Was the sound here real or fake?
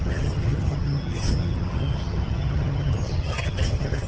fake